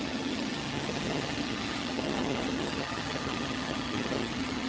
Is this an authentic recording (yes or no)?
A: no